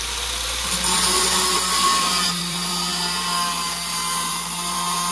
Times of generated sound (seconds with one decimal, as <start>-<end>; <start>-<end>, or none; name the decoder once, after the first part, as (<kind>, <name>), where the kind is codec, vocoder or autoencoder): 0.0-5.1 (vocoder, BigVGAN v2)

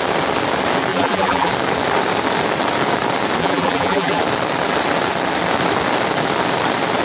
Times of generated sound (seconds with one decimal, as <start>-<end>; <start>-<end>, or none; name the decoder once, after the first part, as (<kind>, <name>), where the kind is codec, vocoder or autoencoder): 0.9-1.5 (vocoder, BigVGAN v2); 3.4-4.2

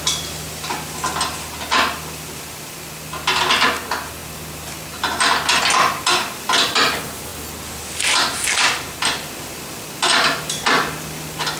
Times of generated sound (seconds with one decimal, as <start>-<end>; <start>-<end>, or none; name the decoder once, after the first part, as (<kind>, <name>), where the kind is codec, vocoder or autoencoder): none